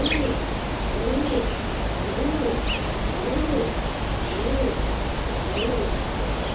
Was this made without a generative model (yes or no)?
yes